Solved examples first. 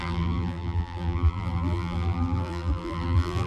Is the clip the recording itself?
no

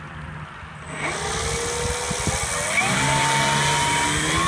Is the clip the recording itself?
yes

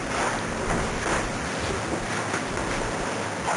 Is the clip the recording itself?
yes